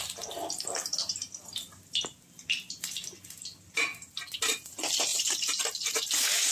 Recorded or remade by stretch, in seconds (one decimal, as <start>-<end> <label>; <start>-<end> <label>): 0.0-5.1 recorded; 5.1-5.6 remade; 5.6-6.5 recorded